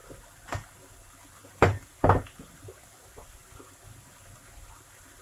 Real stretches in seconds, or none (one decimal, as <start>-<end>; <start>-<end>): 0.0-1.4; 2.9-3.4; 4.1-5.2